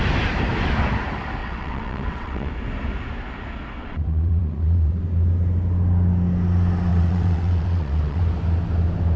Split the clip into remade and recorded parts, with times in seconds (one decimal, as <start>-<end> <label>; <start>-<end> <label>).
0.0-1.4 recorded; 1.4-2.5 remade; 2.5-3.8 recorded; 3.8-5.0 remade; 5.0-6.9 recorded; 6.9-8.2 remade; 8.2-9.2 recorded